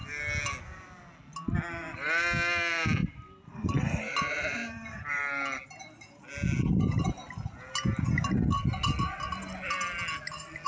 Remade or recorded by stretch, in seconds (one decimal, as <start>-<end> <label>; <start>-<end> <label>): 0.0-3.0 recorded; 3.0-5.2 remade; 5.2-10.7 recorded